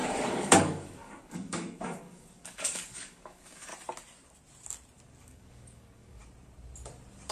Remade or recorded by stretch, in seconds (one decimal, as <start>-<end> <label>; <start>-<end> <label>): 0.0-3.7 remade; 3.7-5.2 recorded; 5.2-6.2 remade; 6.2-7.3 recorded